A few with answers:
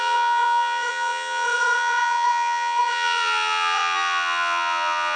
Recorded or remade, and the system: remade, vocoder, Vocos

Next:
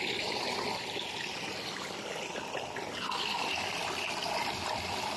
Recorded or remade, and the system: recorded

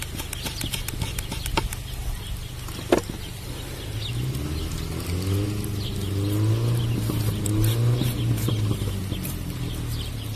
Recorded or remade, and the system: recorded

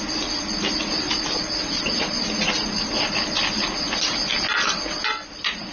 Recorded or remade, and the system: recorded